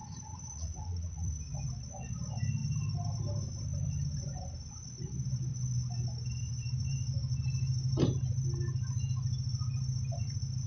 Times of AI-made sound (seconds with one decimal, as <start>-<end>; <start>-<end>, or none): 0.0-1.3